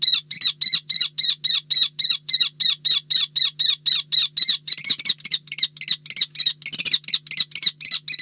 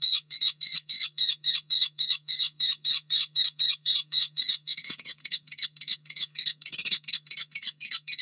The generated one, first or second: second